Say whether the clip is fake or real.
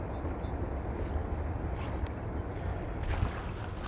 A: real